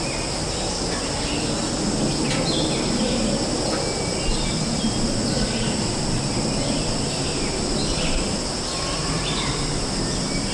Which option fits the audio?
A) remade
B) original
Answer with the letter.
B